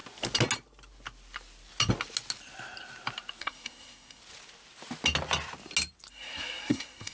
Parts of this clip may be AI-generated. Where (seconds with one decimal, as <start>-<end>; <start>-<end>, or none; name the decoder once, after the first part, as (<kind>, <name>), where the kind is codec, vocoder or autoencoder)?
3.4-4.2 (codec, SNAC); 6.1-7.1